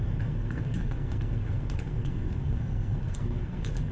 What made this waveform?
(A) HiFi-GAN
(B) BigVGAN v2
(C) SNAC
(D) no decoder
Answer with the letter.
C